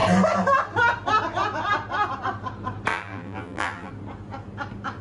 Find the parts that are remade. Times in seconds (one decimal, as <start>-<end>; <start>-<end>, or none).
2.9-3.9